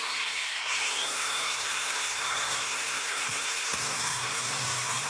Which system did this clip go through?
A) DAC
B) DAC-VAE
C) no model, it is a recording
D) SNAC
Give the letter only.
D